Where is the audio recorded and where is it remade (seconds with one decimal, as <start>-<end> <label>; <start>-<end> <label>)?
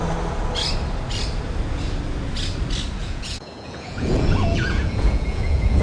0.0-3.0 recorded; 3.0-5.8 remade